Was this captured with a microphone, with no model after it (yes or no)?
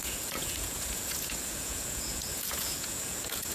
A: no